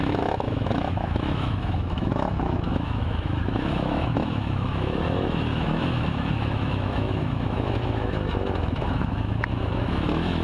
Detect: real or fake fake